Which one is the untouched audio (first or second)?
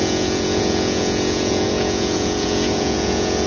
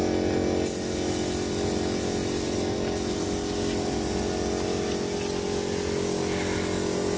second